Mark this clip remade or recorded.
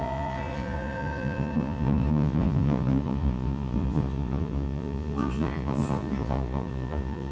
remade